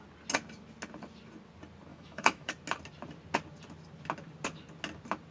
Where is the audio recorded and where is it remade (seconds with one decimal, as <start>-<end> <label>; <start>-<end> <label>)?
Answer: 0.0-1.9 recorded; 1.9-2.5 remade; 2.5-5.3 recorded